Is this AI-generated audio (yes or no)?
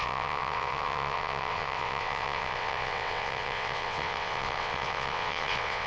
yes